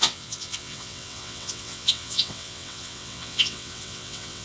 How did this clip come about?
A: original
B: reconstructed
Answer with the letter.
B